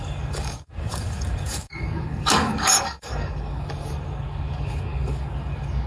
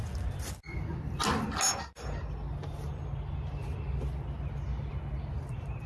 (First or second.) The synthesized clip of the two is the first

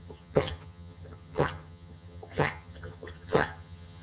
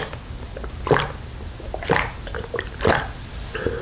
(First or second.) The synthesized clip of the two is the first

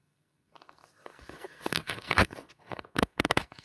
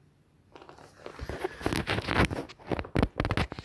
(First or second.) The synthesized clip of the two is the first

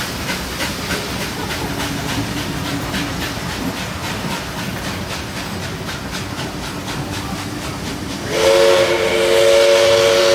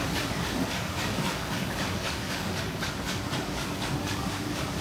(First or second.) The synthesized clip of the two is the second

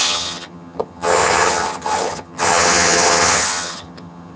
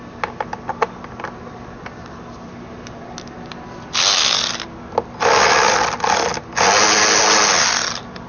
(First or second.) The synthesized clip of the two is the first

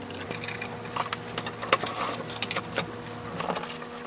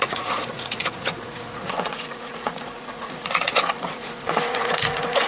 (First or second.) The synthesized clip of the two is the second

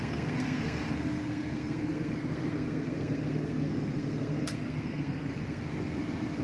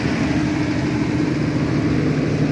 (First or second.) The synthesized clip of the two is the first